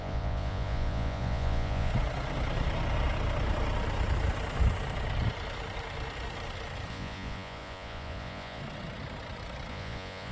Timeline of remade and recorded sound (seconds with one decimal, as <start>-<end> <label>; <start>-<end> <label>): 0.0-1.9 remade; 1.9-6.9 recorded; 6.9-8.6 remade; 8.6-9.7 recorded; 9.7-10.3 remade